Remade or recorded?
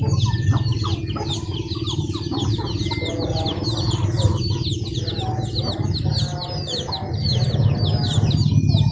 recorded